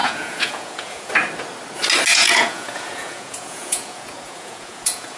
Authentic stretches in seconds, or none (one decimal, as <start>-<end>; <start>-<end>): 1.1-2.1

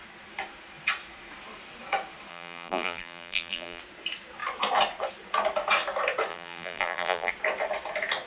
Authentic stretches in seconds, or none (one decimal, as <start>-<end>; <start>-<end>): 0.0-2.3; 3.8-6.3; 7.3-8.3

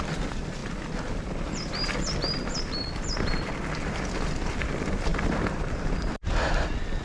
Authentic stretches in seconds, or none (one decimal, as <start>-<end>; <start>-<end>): 0.6-3.9

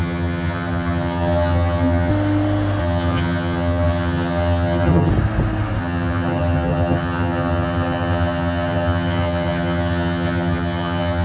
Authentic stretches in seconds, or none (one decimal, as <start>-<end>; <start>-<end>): 2.1-2.8; 5.1-5.8

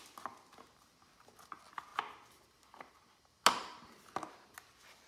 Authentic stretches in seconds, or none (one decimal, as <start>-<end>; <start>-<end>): 0.0-5.1

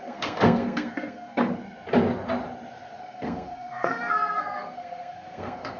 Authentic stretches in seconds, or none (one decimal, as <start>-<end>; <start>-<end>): 1.5-3.0